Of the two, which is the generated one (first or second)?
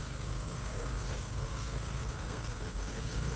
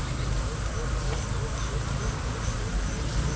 first